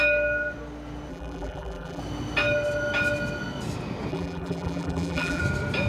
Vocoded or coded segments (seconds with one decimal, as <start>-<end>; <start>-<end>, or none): 1.1-2.0; 4.1-5.4